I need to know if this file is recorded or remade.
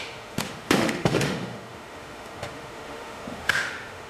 remade